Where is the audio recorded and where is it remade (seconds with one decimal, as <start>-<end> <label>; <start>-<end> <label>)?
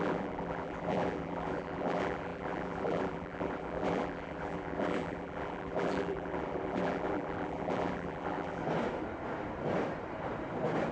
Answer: 0.0-8.6 remade; 8.6-10.9 recorded